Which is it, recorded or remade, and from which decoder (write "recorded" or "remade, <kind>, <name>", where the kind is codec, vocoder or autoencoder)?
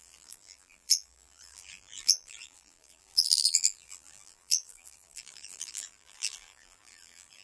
remade, vocoder, BigVGAN v2